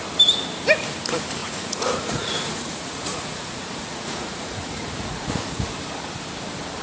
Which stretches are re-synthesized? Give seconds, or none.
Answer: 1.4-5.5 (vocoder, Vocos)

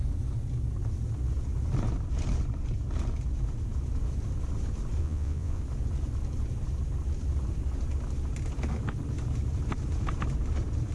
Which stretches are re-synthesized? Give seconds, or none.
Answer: 5.0-5.6 (vocoder, Vocos)

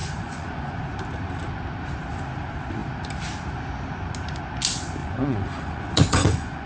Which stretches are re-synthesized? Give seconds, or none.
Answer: 0.0-0.8 (vocoder, Vocos); 5.0-6.7